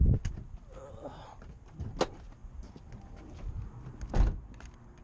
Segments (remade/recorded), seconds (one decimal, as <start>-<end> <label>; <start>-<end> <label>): 0.0-5.0 recorded